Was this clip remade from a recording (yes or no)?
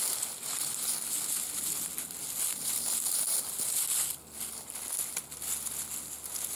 no